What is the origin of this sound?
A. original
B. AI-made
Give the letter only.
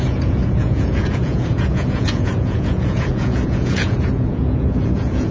B